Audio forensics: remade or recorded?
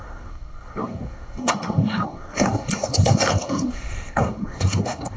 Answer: remade